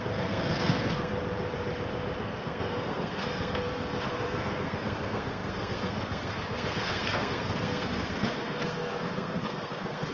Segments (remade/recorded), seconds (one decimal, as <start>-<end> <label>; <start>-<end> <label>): 0.0-1.1 remade; 1.1-2.2 recorded; 2.2-10.1 remade